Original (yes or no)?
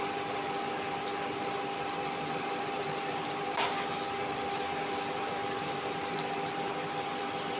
no